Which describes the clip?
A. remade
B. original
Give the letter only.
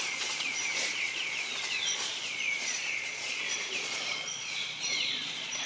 A